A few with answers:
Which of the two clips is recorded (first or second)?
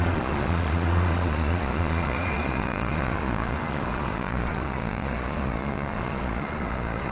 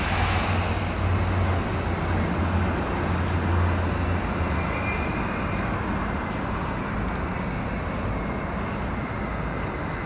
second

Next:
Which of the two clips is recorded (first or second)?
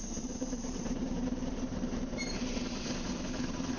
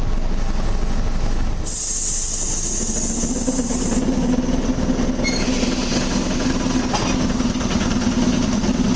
second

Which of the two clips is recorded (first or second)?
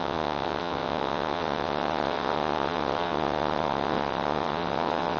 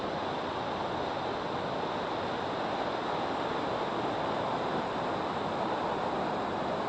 second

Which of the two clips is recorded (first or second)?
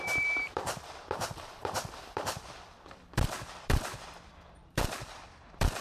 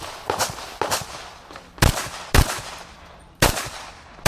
second